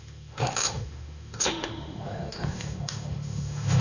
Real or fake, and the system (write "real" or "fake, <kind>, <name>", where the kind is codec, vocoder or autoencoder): fake, autoencoder, DAC-VAE